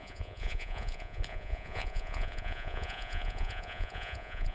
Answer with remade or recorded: remade